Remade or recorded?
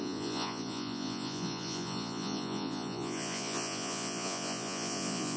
remade